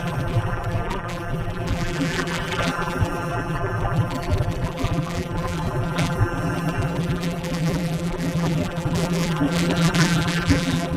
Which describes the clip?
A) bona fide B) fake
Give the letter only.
B